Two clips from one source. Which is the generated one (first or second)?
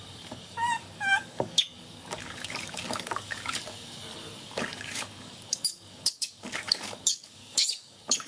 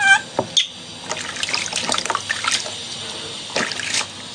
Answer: first